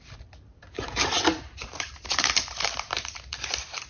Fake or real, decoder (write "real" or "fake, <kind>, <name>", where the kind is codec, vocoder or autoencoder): fake, vocoder, BigVGAN v2